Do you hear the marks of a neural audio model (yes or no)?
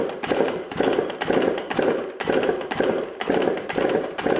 yes